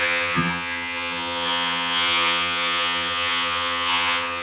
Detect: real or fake fake